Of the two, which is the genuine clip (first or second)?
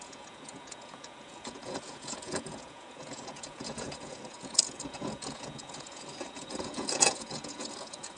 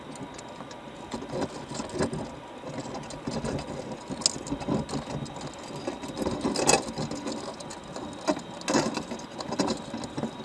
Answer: second